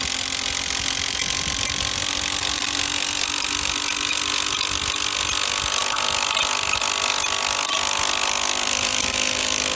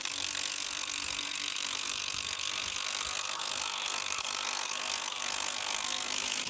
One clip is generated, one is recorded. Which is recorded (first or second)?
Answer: first